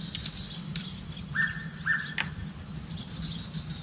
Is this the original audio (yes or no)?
yes